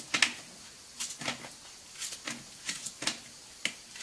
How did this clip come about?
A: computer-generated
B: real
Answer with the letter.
B